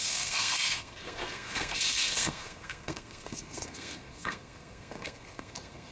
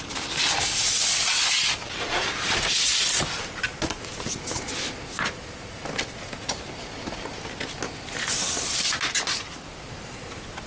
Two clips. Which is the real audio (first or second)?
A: second